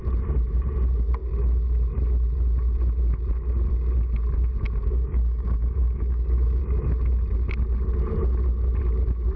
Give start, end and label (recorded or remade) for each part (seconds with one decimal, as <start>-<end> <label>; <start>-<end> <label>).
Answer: 0.0-4.8 recorded; 4.8-6.6 remade; 6.6-9.4 recorded